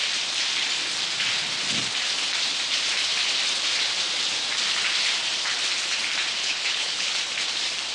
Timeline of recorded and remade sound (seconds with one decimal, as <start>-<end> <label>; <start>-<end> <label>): 0.0-6.4 recorded; 6.4-7.1 remade; 7.1-7.9 recorded